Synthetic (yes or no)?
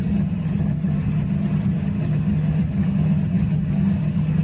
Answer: yes